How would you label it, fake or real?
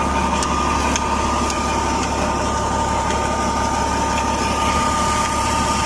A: real